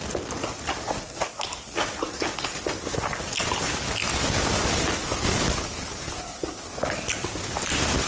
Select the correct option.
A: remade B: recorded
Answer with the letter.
B